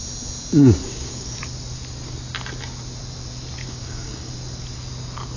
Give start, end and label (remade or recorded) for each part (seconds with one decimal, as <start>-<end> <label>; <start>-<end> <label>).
0.0-0.8 recorded; 0.8-1.4 remade; 1.4-3.6 recorded; 3.6-4.3 remade; 4.3-5.4 recorded